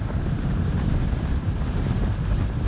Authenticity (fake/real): fake